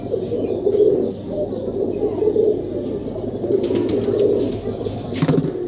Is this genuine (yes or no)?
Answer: yes